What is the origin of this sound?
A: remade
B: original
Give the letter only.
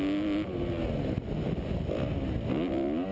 B